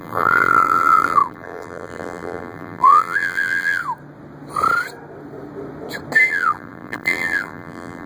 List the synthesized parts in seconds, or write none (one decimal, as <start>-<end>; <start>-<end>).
0.0-3.8; 6.3-8.1